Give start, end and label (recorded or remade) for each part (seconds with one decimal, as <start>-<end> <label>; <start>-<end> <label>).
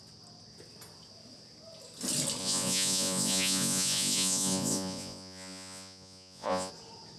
0.0-2.4 recorded; 2.4-6.7 remade; 6.7-7.2 recorded